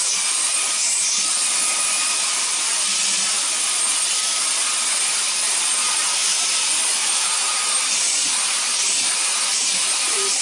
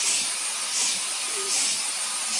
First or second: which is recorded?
second